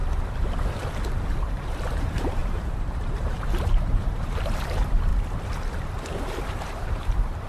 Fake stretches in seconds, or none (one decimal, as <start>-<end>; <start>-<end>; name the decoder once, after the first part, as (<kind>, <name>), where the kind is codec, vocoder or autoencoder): 1.2-5.1 (vocoder, BigVGAN v2); 6.1-7.5